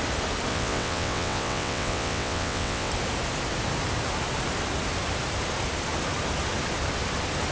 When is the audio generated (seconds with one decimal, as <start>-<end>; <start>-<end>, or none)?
0.5-2.9